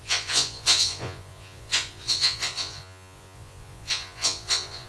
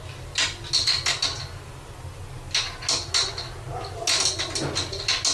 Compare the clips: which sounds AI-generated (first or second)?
first